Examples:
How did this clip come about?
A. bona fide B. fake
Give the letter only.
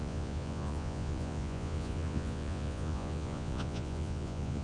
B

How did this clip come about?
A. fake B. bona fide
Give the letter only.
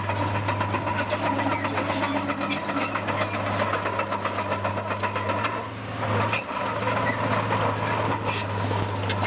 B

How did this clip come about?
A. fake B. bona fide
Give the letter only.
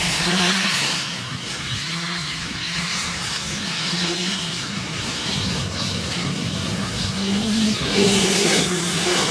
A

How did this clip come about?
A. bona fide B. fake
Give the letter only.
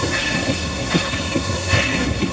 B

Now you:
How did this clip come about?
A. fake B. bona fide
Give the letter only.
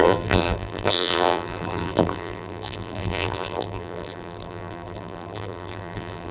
A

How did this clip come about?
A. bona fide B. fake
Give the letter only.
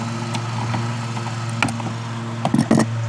A